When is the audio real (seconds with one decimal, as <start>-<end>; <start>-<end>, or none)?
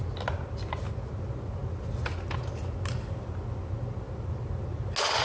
0.0-5.2